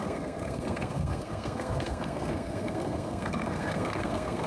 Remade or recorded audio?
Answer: remade